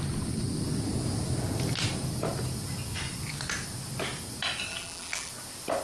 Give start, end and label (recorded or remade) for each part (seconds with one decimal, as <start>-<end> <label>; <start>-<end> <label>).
0.0-4.7 recorded; 4.7-5.3 remade; 5.3-5.8 recorded